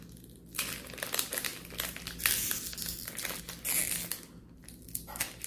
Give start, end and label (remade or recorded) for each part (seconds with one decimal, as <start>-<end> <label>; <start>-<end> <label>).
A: 0.0-5.5 recorded